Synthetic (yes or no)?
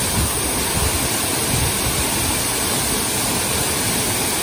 no